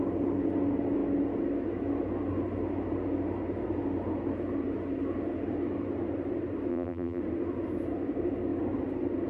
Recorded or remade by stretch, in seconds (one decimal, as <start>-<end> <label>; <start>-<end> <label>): 0.0-6.7 recorded; 6.7-7.2 remade; 7.2-9.3 recorded